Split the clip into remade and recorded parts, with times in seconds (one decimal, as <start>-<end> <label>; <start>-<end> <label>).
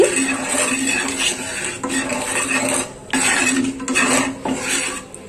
0.0-5.3 recorded